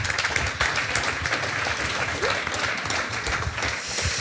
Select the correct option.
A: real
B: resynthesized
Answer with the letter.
A